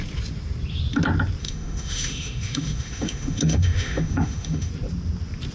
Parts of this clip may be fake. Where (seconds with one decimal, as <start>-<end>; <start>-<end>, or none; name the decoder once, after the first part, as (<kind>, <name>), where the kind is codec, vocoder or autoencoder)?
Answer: 1.4-4.7 (autoencoder, DAC-VAE)